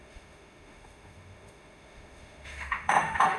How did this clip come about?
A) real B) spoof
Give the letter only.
B